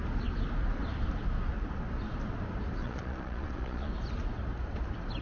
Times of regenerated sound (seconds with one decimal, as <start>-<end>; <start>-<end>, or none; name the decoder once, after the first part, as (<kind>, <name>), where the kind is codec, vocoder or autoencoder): 2.8-3.9 (vocoder, Vocos)